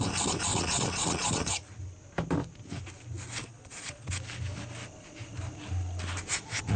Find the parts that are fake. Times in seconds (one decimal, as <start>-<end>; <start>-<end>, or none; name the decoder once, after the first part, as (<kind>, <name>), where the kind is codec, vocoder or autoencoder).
0.5-1.5 (vocoder, Vocos); 3.4-4.1